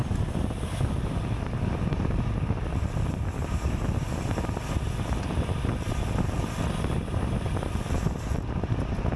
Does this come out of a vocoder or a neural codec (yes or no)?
no